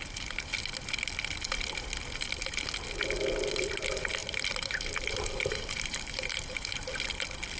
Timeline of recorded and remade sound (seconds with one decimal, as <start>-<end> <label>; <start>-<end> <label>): 0.0-4.2 recorded; 4.2-6.9 remade; 6.9-7.6 recorded